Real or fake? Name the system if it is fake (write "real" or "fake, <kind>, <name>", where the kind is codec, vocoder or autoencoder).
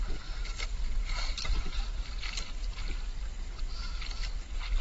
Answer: real